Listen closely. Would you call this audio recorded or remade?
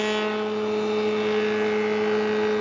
recorded